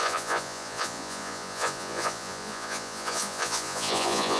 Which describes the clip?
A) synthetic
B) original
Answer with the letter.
A